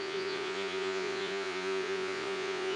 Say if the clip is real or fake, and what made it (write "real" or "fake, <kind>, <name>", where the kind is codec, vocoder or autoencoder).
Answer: fake, vocoder, Vocos